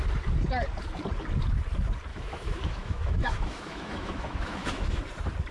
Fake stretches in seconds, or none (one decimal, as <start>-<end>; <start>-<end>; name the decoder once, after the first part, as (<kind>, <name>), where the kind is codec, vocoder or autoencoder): 2.1-5.0 (autoencoder, DAC-VAE)